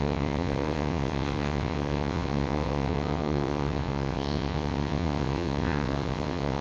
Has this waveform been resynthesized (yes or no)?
yes